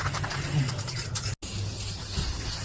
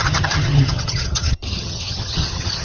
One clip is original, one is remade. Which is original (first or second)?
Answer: first